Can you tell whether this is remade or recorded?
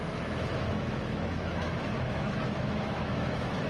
remade